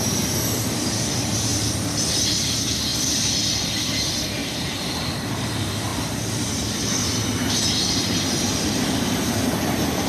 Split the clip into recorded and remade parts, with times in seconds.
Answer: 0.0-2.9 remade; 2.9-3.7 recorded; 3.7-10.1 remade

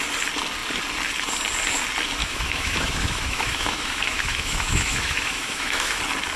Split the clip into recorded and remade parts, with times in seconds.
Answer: 0.0-2.2 recorded; 2.2-6.0 remade; 6.0-6.4 recorded

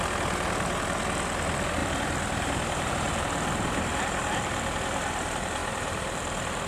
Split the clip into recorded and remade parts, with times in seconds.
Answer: 0.0-1.8 recorded; 1.8-2.9 remade; 2.9-5.6 recorded; 5.6-6.7 remade

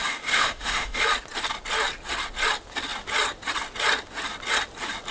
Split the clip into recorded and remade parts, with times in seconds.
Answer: 0.0-1.0 remade; 1.0-5.1 recorded

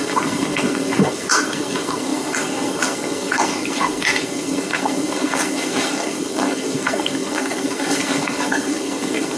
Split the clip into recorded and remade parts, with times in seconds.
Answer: 0.0-9.4 remade

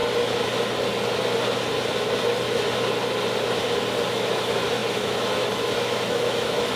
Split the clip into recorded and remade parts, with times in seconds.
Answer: 0.0-4.1 recorded; 4.1-6.8 remade

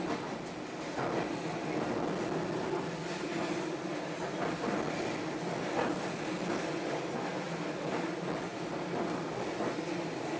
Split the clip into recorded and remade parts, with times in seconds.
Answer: 0.0-10.4 recorded